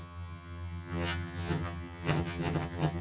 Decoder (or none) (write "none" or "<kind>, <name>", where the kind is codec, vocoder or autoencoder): vocoder, HiFi-GAN